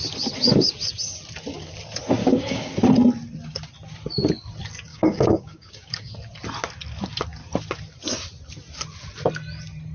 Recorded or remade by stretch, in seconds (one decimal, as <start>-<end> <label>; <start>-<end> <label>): 0.0-2.2 recorded; 2.2-2.7 remade; 2.7-4.9 recorded; 4.9-6.1 remade; 6.1-9.9 recorded